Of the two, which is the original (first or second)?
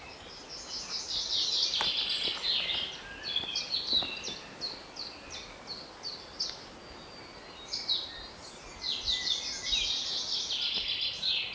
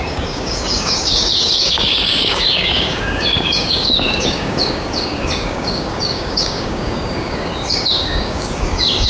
first